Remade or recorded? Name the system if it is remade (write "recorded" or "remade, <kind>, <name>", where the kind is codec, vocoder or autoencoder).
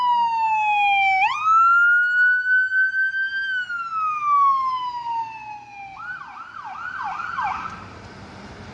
recorded